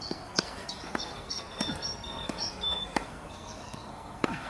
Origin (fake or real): fake